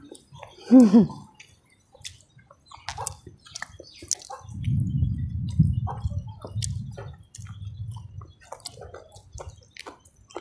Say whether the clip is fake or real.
real